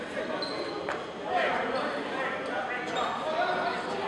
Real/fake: real